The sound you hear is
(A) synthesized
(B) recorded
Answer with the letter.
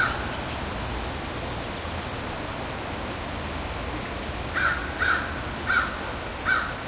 B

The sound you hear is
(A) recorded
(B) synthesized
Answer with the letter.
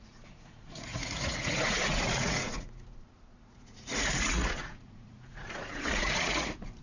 B